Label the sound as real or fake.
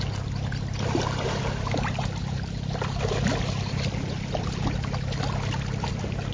real